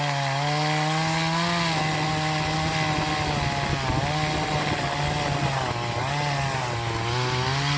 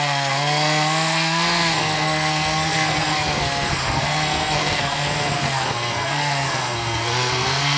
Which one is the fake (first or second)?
second